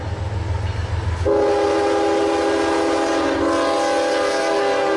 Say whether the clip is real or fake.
real